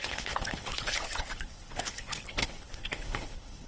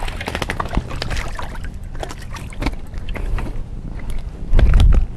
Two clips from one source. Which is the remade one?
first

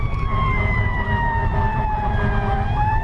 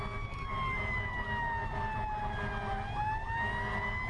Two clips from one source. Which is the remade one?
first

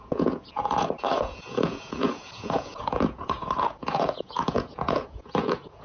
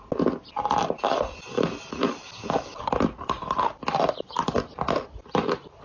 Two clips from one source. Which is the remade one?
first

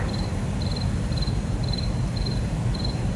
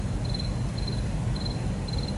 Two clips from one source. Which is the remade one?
first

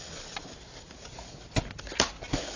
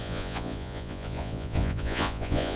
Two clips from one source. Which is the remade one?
second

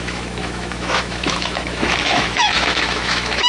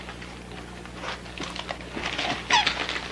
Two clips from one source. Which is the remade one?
first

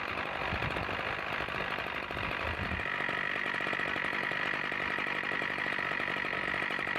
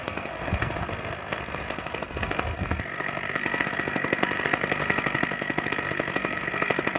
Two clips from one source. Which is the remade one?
second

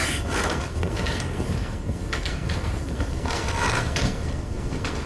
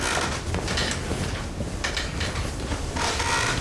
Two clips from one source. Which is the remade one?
first